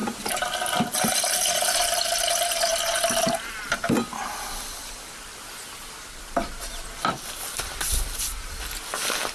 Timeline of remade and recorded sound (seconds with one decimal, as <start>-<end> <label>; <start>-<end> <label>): 0.0-9.3 recorded